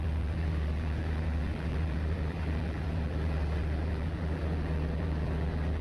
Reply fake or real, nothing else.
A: fake